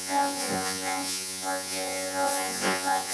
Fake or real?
fake